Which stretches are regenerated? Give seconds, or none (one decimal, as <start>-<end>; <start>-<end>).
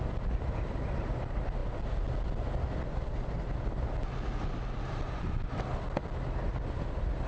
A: none